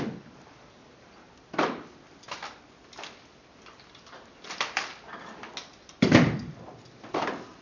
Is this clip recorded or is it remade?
recorded